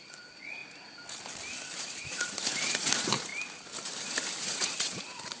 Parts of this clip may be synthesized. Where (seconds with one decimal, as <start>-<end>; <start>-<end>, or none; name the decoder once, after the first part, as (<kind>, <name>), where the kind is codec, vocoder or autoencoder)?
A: 0.0-0.6 (vocoder, Vocos); 1.8-3.3; 4.4-5.4